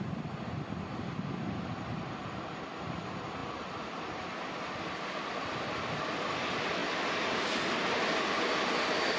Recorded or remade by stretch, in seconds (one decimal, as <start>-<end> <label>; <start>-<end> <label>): 0.0-6.8 recorded; 6.8-8.4 remade; 8.4-9.2 recorded